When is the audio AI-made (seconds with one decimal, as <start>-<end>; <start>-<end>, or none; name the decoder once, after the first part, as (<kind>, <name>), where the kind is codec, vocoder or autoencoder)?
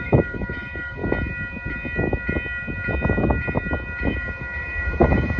0.0-1.0 (autoencoder, DAC-VAE); 4.0-5.4